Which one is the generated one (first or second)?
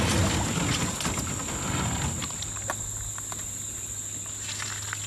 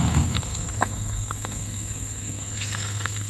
second